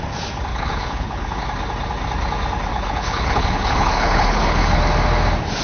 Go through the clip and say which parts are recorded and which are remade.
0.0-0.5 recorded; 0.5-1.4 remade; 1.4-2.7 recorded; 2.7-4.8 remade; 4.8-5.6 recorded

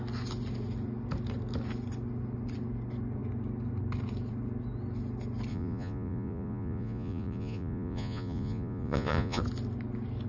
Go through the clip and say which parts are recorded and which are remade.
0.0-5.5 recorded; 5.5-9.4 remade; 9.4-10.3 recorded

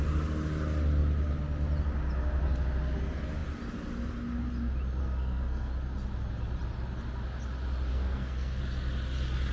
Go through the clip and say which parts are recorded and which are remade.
0.0-5.0 recorded; 5.0-5.7 remade; 5.7-7.9 recorded; 7.9-8.6 remade; 8.6-9.5 recorded

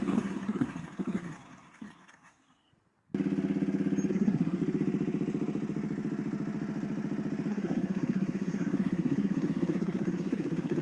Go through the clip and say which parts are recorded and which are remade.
0.0-2.7 remade; 2.7-4.1 recorded; 4.1-4.6 remade; 4.6-7.5 recorded; 7.5-10.8 remade

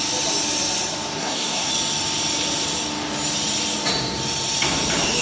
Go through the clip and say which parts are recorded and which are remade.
0.0-1.2 recorded; 1.2-1.7 remade; 1.7-5.2 recorded

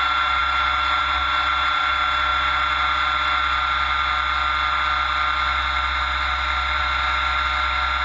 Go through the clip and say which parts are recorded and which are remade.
0.0-8.0 recorded